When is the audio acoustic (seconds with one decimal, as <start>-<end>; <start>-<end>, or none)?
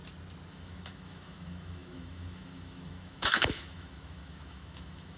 0.0-0.5